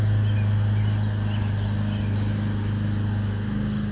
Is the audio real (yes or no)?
yes